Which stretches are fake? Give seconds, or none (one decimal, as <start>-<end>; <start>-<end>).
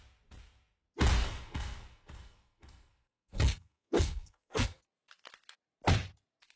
1.2-4.8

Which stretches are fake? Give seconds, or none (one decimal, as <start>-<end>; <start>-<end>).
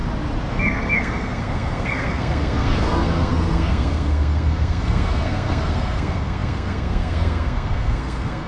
0.5-8.5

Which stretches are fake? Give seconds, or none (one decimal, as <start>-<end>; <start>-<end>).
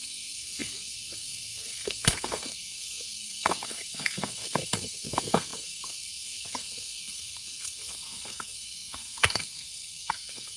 0.0-10.6